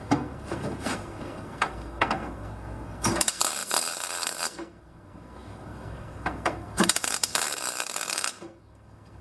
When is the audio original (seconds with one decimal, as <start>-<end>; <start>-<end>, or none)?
none

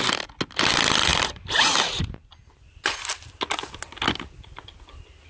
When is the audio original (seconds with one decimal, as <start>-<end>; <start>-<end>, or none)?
0.0-5.3

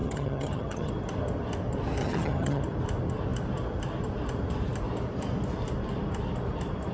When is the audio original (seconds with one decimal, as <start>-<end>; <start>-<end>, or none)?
0.9-2.0; 2.6-6.9

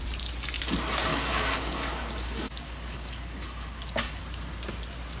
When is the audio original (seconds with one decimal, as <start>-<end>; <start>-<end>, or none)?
0.0-1.1; 4.2-5.2

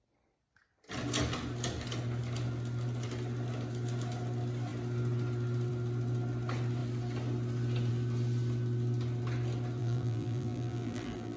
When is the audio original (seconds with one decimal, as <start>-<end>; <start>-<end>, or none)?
0.0-9.8

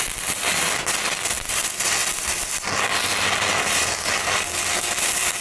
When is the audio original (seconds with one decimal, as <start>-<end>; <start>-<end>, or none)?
0.0-5.4

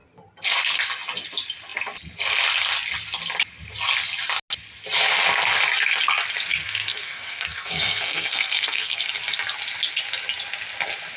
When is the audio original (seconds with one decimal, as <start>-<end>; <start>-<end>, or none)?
0.0-6.6; 9.0-11.2